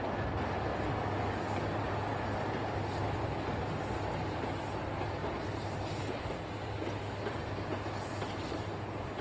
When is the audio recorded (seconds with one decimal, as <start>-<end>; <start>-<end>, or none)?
0.0-9.2